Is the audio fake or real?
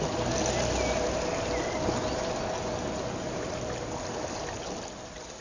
real